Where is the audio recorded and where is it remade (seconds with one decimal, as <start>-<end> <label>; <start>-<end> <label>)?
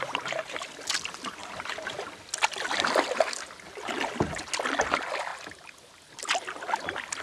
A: 0.0-7.2 recorded